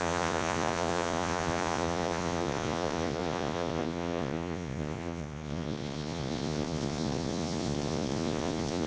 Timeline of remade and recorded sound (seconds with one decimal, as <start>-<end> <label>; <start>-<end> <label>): 0.0-8.9 remade